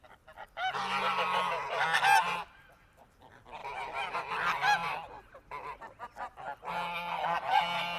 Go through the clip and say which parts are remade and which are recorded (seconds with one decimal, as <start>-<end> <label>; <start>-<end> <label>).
0.0-8.0 recorded